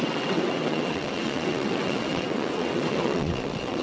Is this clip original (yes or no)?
no